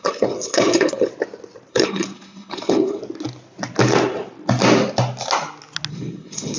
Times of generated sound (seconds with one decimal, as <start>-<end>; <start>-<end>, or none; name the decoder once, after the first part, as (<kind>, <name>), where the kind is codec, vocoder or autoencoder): 0.0-1.1 (codec, HILCodec); 1.7-3.0; 5.9-6.6